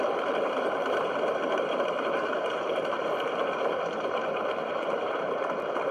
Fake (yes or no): yes